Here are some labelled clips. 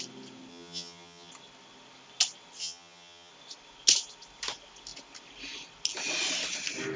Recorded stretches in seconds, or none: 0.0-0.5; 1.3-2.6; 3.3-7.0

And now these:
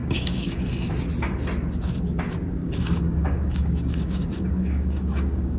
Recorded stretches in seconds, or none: 0.9-2.6

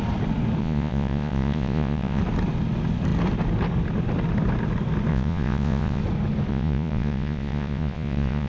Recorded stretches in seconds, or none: 0.0-0.6; 2.2-5.1; 6.0-6.5